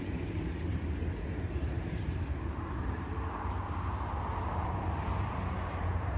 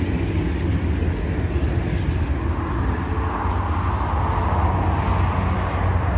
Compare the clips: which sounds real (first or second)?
second